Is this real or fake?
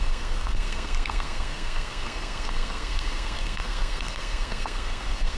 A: fake